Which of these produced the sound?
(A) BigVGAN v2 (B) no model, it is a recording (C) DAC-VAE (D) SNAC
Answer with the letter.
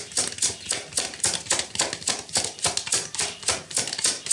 B